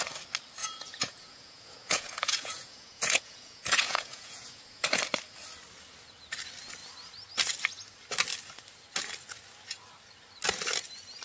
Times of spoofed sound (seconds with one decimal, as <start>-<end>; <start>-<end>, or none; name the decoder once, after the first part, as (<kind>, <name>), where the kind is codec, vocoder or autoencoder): 0.6-5.0 (vocoder, Vocos)